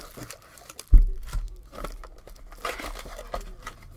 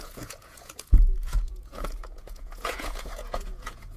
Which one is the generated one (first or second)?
second